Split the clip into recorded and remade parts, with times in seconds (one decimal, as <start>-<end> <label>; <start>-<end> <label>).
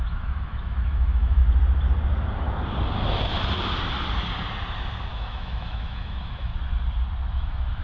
0.0-1.4 remade; 1.4-5.1 recorded; 5.1-6.5 remade; 6.5-7.3 recorded; 7.3-7.8 remade